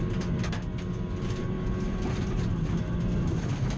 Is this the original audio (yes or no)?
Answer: yes